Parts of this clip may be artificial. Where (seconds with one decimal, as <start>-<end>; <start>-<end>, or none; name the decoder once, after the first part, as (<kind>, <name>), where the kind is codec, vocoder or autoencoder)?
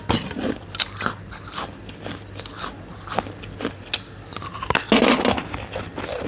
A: none